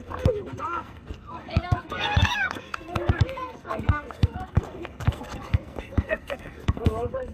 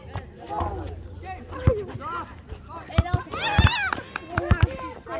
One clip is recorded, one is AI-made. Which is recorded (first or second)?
second